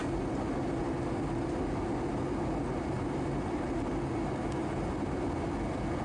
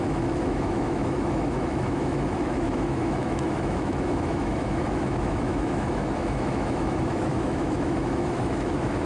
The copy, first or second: second